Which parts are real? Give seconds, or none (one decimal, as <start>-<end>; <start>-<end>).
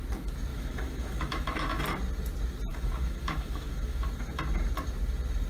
0.0-0.5; 1.8-2.7; 4.1-5.5